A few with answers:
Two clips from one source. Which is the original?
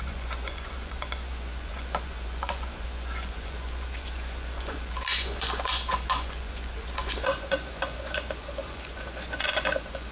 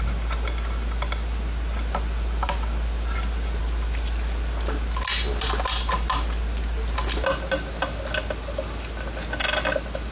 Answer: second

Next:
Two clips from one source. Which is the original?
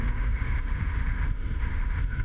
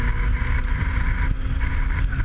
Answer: second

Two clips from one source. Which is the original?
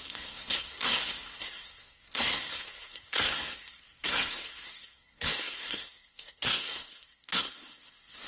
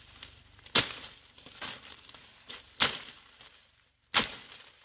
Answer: second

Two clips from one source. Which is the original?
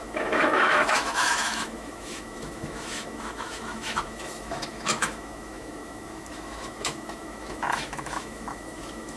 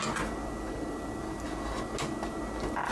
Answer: second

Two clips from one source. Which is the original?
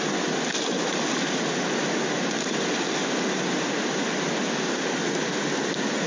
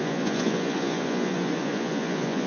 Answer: first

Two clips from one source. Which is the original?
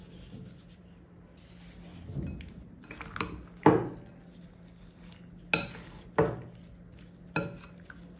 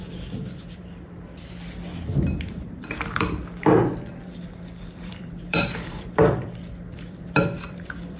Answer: first